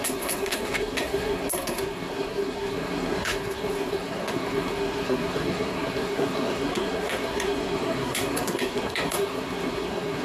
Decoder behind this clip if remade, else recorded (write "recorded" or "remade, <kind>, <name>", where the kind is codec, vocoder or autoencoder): remade, codec, SNAC